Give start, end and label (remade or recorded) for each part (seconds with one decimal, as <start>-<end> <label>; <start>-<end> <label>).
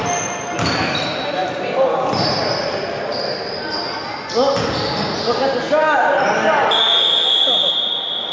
0.0-8.3 recorded